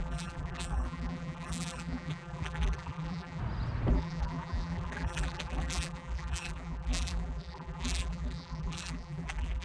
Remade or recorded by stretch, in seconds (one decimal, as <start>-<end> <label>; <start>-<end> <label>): 0.0-3.4 remade; 3.4-3.9 recorded; 3.9-9.6 remade